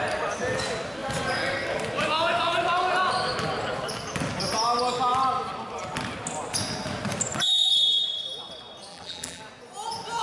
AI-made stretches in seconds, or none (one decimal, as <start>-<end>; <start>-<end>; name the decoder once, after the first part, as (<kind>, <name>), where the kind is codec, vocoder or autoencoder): 8.9-9.4 (vocoder, BigVGAN v2)